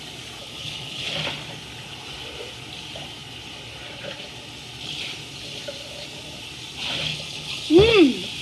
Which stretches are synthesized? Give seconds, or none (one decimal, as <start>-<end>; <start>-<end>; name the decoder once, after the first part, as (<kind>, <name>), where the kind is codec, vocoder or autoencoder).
0.4-1.1 (codec, HILCodec); 7.1-7.7